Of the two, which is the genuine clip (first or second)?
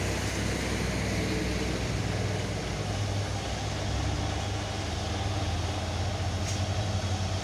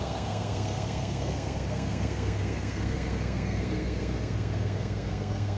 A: first